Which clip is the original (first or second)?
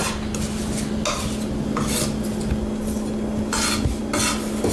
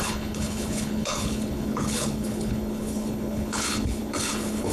first